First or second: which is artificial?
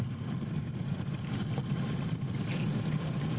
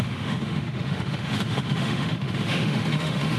second